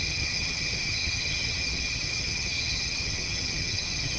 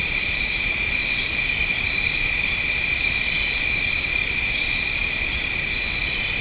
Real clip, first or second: second